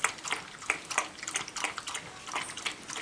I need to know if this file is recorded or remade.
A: recorded